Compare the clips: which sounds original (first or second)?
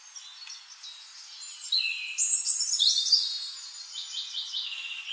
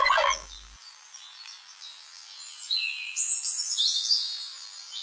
first